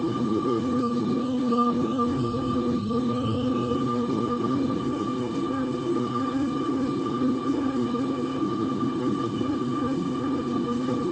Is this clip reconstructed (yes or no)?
yes